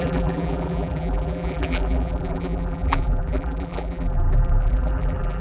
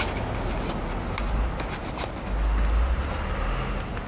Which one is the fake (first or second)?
first